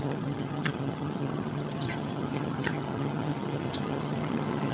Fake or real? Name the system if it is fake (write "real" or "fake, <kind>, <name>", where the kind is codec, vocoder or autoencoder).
fake, vocoder, HiFi-GAN